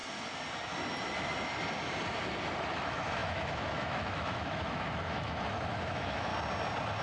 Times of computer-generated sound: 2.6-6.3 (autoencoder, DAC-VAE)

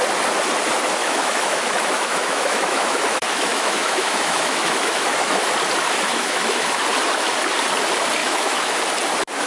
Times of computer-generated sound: 1.0-5.5 (autoencoder, DAC-VAE); 6.1-6.8; 8.2-8.8

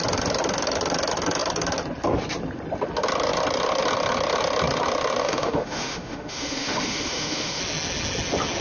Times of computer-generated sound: 5.2-7.6 (autoencoder, DAC-VAE)

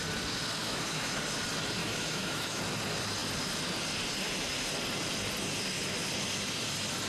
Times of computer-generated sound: 0.6-1.2 (autoencoder, DAC-VAE); 1.8-2.6

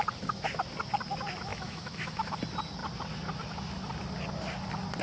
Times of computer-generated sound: 1.5-2.4 (autoencoder, DAC-VAE)

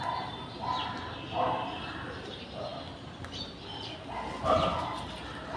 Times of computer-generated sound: none

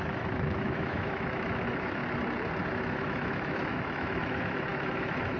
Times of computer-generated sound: 0.0-2.0 (autoencoder, DAC-VAE); 2.7-5.4

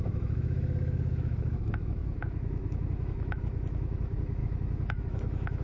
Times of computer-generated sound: 0.0-5.6 (autoencoder, DAC-VAE)